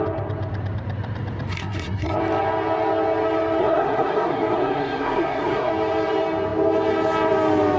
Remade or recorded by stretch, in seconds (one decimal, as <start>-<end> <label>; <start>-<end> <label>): 0.0-1.5 recorded; 1.5-2.2 remade; 2.2-3.6 recorded; 3.6-5.7 remade; 5.7-7.8 recorded